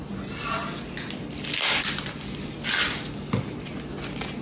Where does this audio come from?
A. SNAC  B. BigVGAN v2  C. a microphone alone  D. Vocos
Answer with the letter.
C